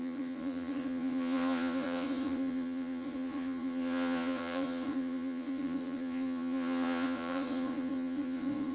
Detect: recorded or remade remade